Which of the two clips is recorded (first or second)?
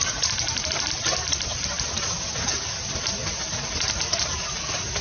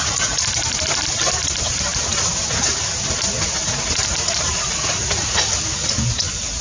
second